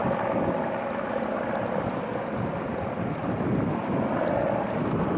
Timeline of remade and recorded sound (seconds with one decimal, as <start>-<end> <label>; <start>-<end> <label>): 0.0-2.5 recorded; 2.5-3.3 remade; 3.3-5.2 recorded